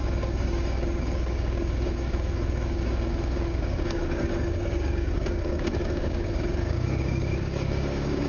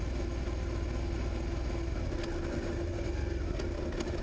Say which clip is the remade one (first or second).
first